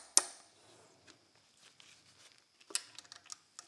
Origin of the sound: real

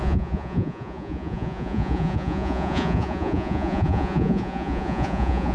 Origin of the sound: fake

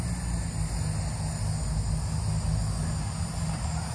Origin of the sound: real